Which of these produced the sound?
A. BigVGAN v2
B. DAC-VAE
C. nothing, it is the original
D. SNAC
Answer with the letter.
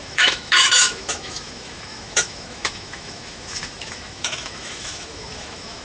B